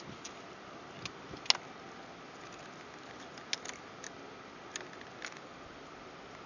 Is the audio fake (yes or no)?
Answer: no